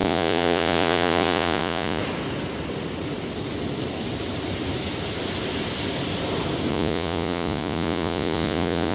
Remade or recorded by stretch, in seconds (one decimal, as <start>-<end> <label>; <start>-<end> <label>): 0.0-2.0 remade; 2.0-6.7 recorded; 6.7-8.9 remade